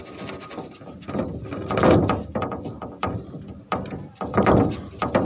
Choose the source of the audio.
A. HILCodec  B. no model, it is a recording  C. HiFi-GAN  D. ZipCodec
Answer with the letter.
B